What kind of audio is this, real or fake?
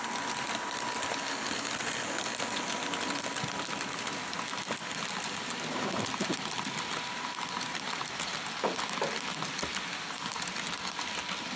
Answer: real